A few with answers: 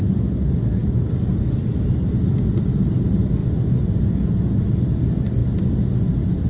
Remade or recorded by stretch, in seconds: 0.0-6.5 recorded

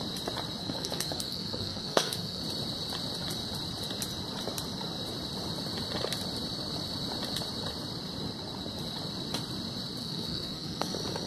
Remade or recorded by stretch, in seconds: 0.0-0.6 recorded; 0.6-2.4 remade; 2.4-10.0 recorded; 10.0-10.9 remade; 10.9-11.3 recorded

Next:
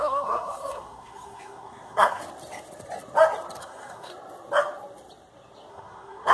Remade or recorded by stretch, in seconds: 0.0-2.2 remade; 2.2-3.6 recorded; 3.6-4.1 remade; 4.1-5.7 recorded; 5.7-6.3 remade

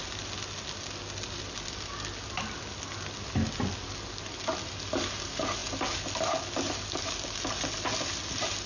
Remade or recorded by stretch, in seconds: 0.0-8.7 recorded

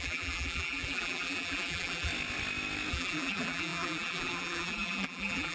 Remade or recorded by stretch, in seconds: 0.0-2.1 remade; 2.1-2.9 recorded; 2.9-5.5 remade

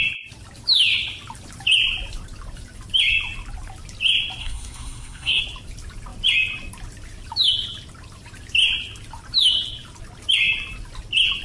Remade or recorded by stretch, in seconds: 0.0-4.4 recorded; 4.4-5.4 remade; 5.4-11.4 recorded

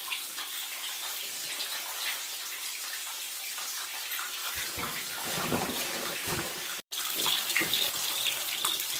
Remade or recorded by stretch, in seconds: 0.0-1.5 remade; 1.5-2.8 recorded; 2.8-3.8 remade; 3.8-4.4 recorded; 4.4-7.9 remade; 7.9-9.0 recorded

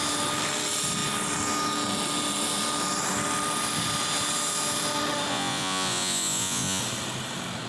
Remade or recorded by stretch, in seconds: 0.0-5.3 recorded; 5.3-6.8 remade; 6.8-7.7 recorded